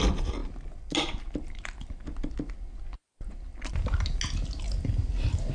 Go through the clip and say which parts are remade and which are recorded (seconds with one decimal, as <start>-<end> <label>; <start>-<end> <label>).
0.0-5.5 recorded